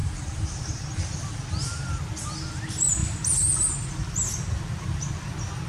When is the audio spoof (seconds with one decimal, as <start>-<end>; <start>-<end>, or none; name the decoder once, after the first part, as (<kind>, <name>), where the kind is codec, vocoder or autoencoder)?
0.0-1.1 (vocoder, BigVGAN v2)